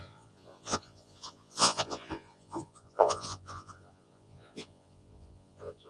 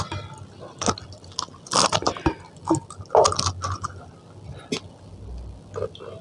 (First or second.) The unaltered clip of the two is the second